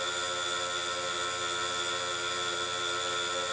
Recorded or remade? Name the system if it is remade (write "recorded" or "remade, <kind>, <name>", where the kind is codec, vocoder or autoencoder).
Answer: recorded